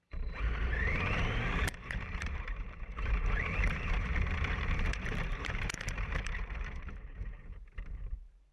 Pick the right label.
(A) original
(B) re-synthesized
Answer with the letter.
B